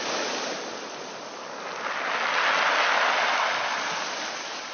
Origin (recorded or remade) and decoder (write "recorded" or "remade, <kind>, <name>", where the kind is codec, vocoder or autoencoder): recorded